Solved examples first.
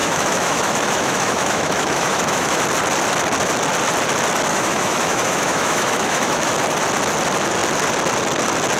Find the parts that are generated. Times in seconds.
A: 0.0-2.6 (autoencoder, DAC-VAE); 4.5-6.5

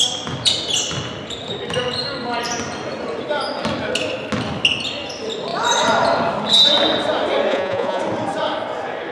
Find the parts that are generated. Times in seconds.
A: 7.5-8.0 (vocoder, Vocos)

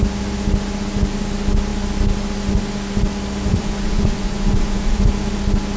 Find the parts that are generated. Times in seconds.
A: 3.5-5.1 (vocoder, Vocos)

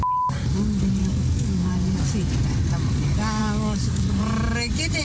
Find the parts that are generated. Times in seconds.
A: 1.0-1.7 (codec, DAC); 3.4-4.2

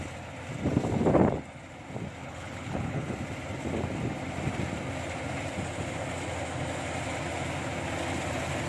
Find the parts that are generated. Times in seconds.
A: 2.2-3.1 (codec, HILCodec)

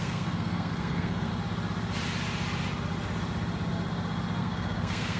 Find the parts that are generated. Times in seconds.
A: 0.0-1.3 (codec, SNAC); 4.4-5.2

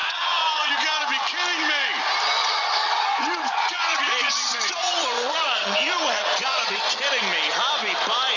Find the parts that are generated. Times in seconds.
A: 0.0-0.7 (vocoder, Vocos); 2.4-6.8

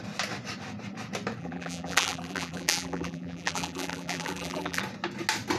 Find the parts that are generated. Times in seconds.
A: 1.4-4.8 (vocoder, BigVGAN v2)